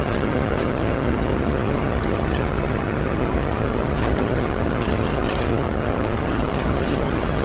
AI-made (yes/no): yes